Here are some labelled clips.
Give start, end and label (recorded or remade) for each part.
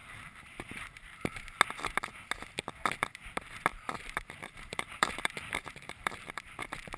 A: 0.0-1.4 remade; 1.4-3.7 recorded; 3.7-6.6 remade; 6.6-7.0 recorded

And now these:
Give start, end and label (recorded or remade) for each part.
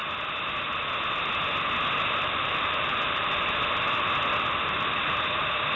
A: 0.0-5.8 recorded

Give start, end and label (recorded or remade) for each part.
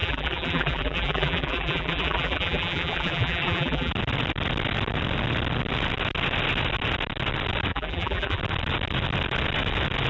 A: 0.0-3.9 remade; 3.9-7.7 recorded; 7.7-8.4 remade; 8.4-10.1 recorded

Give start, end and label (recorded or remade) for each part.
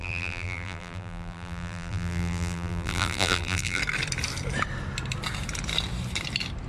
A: 0.0-3.8 remade; 3.8-6.7 recorded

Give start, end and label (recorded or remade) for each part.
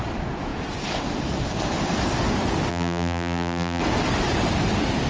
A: 0.0-2.7 recorded; 2.7-3.8 remade; 3.8-5.1 recorded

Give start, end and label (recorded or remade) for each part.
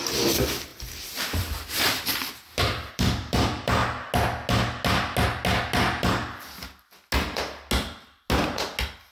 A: 0.0-3.8 remade; 3.8-9.1 recorded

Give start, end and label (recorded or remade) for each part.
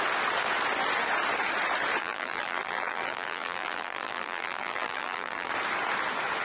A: 0.0-2.0 recorded; 2.0-5.5 remade; 5.5-6.4 recorded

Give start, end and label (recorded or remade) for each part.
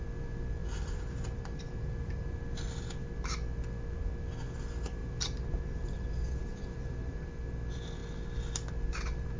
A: 0.0-0.6 recorded; 0.6-2.2 remade; 2.2-5.0 recorded; 5.0-7.3 remade; 7.3-9.4 recorded